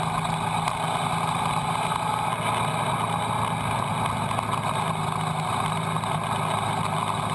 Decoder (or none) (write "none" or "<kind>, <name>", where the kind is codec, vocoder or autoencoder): none